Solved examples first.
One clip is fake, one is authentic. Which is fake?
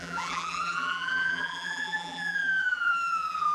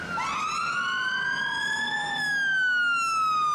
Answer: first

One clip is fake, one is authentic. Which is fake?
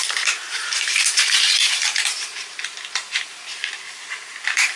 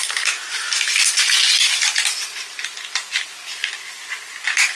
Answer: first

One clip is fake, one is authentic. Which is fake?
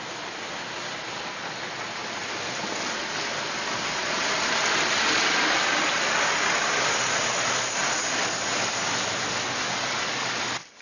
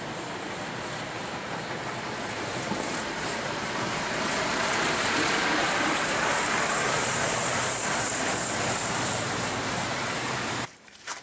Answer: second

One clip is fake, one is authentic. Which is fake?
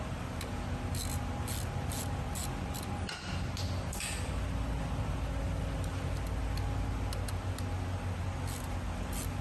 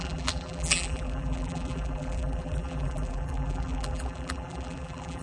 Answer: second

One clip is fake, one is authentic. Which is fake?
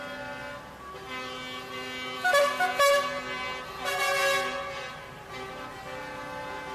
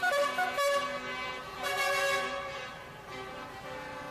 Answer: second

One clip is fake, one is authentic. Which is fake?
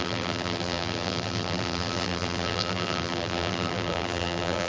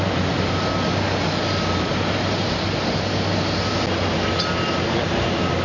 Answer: first